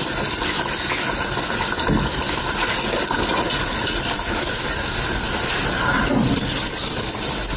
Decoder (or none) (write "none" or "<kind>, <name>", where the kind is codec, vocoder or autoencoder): none